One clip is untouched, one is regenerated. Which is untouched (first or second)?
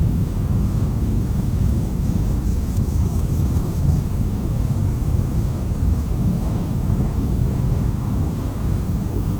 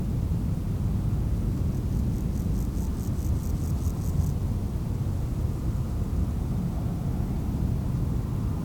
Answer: second